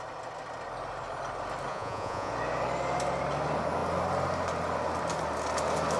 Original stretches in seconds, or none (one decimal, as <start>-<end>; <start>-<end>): 0.0-1.7; 2.3-6.0